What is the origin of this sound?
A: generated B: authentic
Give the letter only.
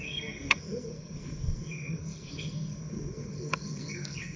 A